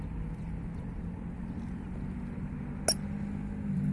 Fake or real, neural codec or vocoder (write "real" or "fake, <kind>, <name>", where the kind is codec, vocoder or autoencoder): real